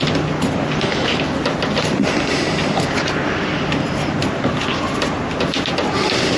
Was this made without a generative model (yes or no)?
yes